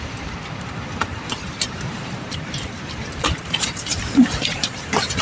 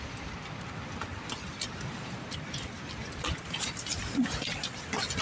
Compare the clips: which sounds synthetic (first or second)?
first